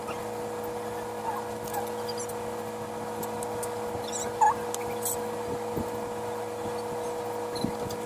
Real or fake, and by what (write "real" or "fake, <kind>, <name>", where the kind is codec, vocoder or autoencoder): real